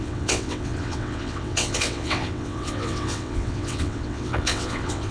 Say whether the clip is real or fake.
fake